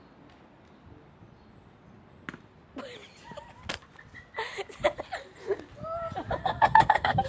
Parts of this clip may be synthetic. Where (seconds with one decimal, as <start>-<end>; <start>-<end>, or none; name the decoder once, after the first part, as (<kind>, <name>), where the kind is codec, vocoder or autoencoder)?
6.4-7.3 (codec, SNAC)